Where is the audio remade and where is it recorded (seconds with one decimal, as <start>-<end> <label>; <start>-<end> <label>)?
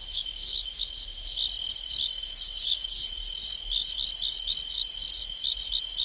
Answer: 0.0-0.8 remade; 0.8-2.1 recorded; 2.1-3.1 remade; 3.1-6.0 recorded